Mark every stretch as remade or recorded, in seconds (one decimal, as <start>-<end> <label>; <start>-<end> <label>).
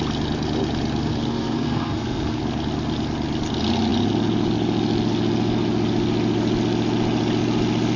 0.0-1.1 recorded; 1.1-2.4 remade; 2.4-8.0 recorded